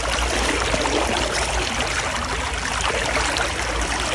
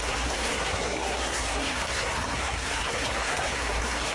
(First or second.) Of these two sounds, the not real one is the second